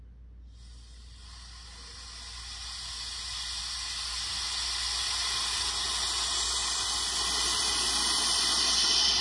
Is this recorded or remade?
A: recorded